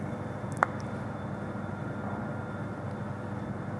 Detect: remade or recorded remade